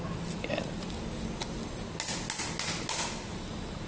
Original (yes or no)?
yes